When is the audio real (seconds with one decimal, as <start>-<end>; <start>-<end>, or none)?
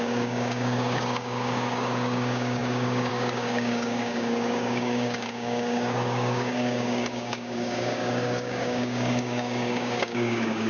none